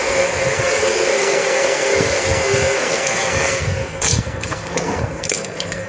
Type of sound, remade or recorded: remade